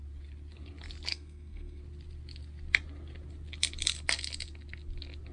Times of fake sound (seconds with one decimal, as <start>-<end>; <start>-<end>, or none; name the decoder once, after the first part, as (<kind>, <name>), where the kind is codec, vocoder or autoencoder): 1.1-1.8 (codec, SNAC)